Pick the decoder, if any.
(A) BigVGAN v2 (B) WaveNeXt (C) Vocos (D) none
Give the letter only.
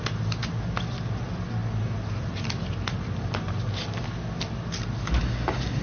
D